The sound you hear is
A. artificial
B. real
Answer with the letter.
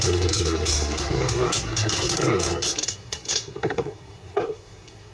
A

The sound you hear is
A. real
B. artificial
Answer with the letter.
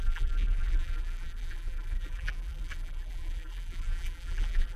B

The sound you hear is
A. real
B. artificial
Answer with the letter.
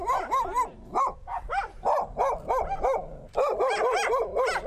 A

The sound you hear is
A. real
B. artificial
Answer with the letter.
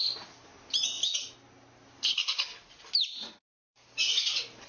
A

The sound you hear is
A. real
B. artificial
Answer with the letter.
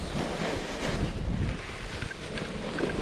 A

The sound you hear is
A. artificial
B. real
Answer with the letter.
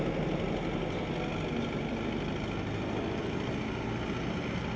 B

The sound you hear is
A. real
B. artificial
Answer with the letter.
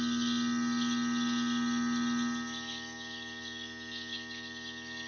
A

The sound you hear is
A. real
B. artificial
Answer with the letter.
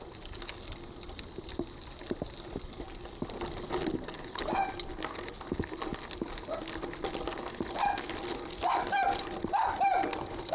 A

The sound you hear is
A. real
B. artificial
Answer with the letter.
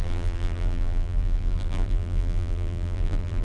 B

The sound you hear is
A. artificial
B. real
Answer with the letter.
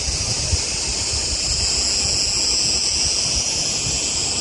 B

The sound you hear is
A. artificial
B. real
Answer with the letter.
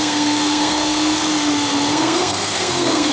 A